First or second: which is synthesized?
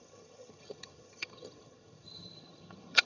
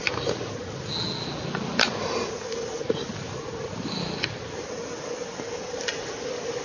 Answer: first